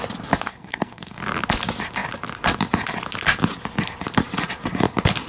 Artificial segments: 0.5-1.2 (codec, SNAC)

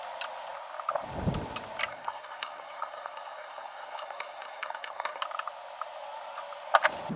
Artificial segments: 1.9-5.2 (codec, SNAC)

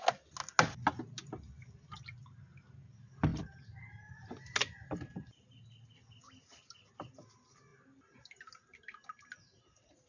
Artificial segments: none

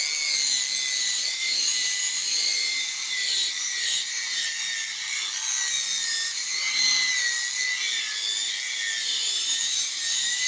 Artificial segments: 1.0-4.6 (vocoder, BigVGAN v2); 6.0-7.2; 9.0-10.5

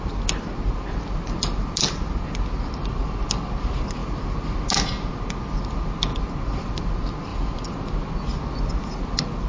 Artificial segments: none

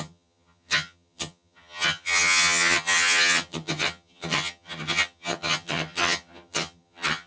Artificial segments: 0.0-7.3 (vocoder, HiFi-GAN)

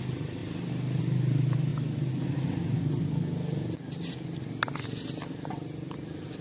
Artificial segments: 0.0-0.4 (vocoder, BigVGAN v2); 1.0-1.7; 5.5-6.4

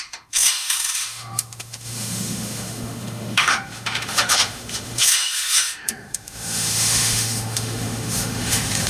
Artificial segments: 0.0-8.9 (autoencoder, DAC-VAE)